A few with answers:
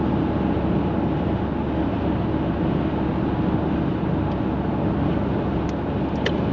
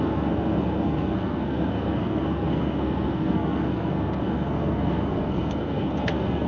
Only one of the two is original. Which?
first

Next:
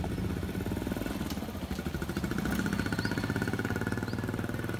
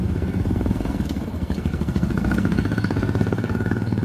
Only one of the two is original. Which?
first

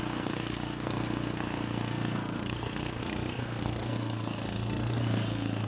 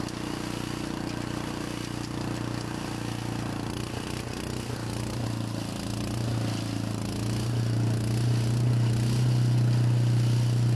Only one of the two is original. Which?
second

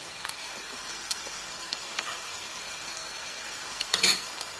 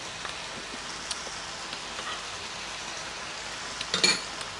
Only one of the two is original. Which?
second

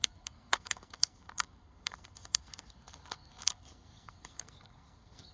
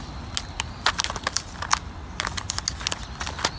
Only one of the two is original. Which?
second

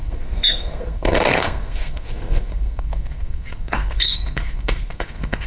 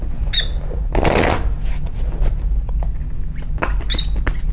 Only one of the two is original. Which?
second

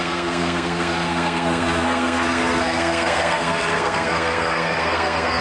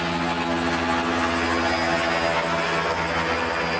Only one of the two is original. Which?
second